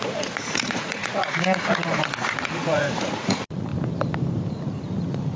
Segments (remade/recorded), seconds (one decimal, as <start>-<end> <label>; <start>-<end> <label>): 0.0-3.7 remade; 3.7-4.5 recorded; 4.5-5.4 remade